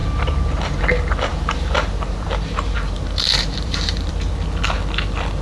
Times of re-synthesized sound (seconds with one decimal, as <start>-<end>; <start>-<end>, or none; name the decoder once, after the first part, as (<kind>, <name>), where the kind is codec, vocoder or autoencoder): 1.3-4.1 (vocoder, BigVGAN v2)